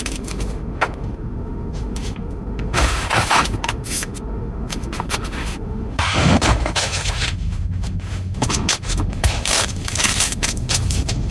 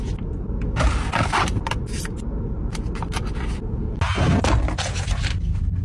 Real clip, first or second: second